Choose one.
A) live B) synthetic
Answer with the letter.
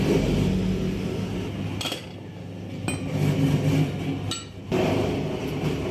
A